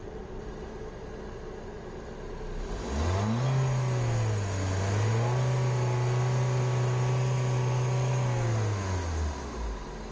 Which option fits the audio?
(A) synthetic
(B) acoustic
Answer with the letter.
B